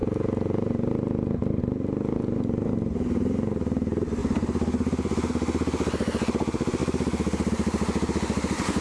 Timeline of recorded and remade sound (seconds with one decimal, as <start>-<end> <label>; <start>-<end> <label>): 0.0-8.8 recorded